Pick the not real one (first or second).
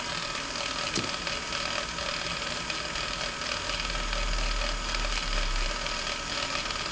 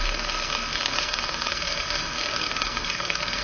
second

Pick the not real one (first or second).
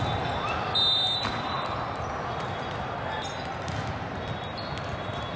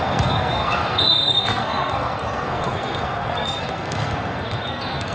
second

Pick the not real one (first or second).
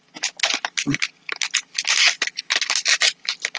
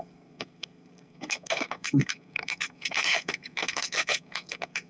second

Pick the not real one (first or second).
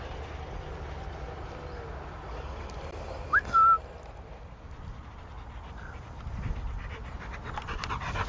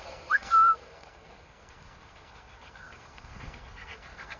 second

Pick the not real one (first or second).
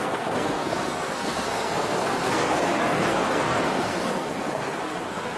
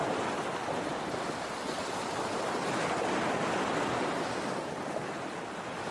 first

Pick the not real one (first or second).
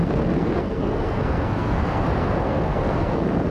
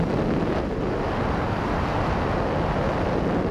first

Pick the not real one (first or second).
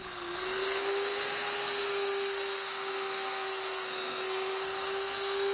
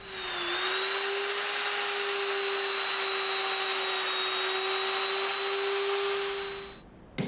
first